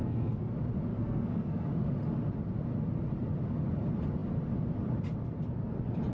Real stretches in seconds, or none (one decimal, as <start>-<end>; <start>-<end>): 0.5-0.9; 1.7-6.1